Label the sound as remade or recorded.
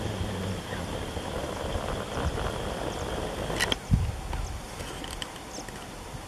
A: recorded